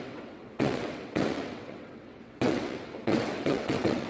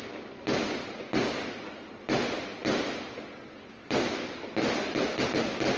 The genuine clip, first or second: second